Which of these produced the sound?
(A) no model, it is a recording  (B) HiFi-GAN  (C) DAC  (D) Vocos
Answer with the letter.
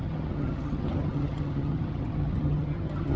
B